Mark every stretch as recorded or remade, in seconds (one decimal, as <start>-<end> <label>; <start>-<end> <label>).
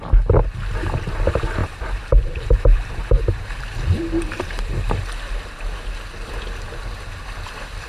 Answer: 0.0-1.6 recorded; 1.6-5.0 remade; 5.0-7.9 recorded